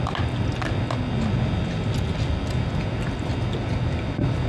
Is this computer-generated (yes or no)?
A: no